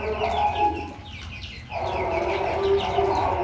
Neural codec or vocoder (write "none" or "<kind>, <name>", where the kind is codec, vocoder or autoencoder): none